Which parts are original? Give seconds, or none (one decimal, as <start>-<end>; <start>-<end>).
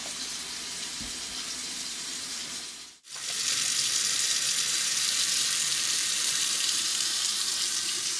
0.0-0.9; 2.4-4.7